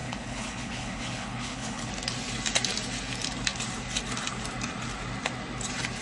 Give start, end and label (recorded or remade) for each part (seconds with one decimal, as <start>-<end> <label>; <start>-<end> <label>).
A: 0.0-1.9 remade; 1.9-6.0 recorded